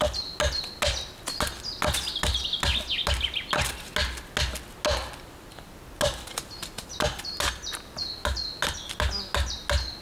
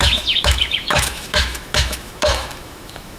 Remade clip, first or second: second